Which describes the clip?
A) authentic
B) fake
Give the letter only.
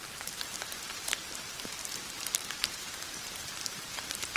B